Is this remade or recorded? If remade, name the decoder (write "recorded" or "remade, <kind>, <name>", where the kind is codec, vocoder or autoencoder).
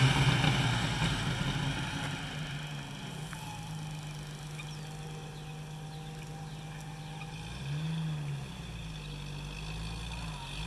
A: recorded